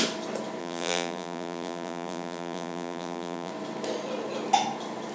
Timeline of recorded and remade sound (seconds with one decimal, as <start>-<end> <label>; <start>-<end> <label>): 0.0-0.6 recorded; 0.6-3.5 remade; 3.5-5.1 recorded